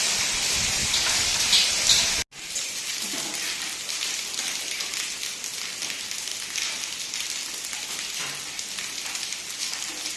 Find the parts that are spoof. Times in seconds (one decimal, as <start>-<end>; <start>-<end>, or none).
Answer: 0.8-1.4